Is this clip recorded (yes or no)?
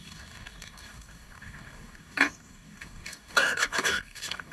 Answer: no